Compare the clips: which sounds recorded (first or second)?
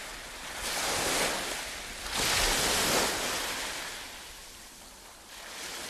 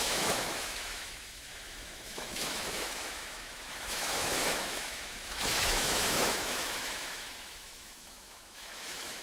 first